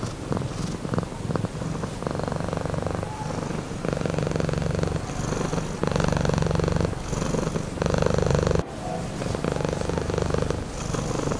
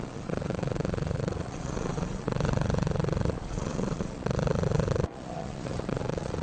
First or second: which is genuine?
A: first